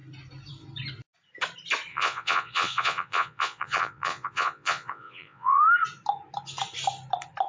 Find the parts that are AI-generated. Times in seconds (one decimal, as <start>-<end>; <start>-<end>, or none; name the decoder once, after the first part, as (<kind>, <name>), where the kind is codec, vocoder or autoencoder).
1.9-5.6 (vocoder, Vocos)